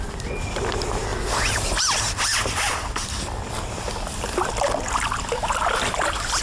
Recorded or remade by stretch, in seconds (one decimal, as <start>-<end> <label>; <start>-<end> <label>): 0.0-1.1 recorded; 1.1-1.8 remade; 1.8-2.4 recorded; 2.4-5.6 remade; 5.6-6.4 recorded